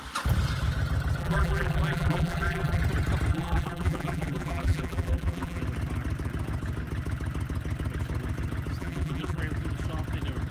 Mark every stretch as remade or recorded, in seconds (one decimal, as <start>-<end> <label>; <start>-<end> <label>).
0.0-1.2 recorded; 1.2-2.8 remade; 2.8-3.3 recorded; 3.3-5.6 remade; 5.6-8.8 recorded; 8.8-9.4 remade; 9.4-10.5 recorded